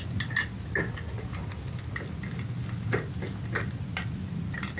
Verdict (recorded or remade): recorded